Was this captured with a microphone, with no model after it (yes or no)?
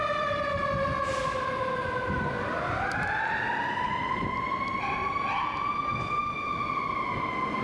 yes